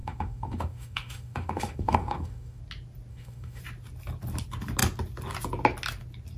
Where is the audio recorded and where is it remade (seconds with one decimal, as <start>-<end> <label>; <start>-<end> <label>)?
0.0-2.6 remade; 2.6-3.1 recorded; 3.1-3.6 remade; 3.6-6.4 recorded